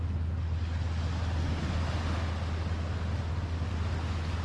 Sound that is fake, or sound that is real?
real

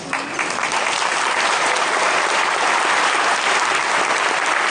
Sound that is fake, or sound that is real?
real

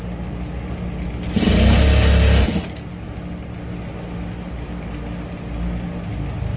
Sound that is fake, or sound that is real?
real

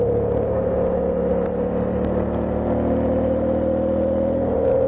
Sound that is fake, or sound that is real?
real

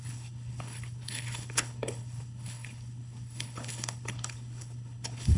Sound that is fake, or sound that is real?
fake